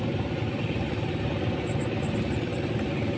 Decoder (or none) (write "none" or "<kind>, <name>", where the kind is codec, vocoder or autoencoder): none